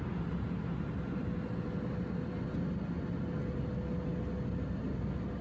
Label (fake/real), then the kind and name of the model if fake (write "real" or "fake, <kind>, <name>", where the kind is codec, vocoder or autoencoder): real